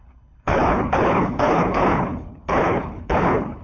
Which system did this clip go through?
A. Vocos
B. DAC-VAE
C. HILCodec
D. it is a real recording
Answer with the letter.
C